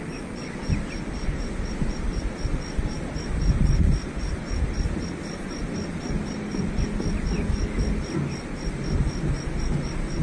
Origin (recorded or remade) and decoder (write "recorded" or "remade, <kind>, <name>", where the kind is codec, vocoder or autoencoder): recorded